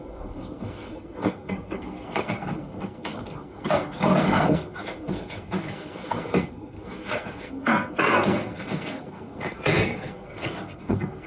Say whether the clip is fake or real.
fake